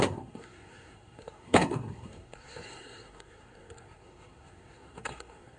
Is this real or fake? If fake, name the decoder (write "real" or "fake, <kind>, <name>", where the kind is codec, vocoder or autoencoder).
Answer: fake, codec, SNAC